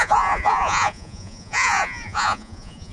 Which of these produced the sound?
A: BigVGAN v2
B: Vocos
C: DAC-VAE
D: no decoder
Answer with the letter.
B